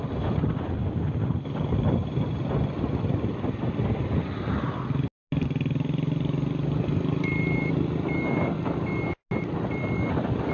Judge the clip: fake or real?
real